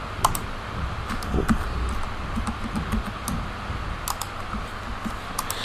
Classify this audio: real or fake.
real